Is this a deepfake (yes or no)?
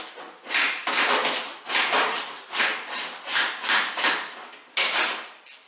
no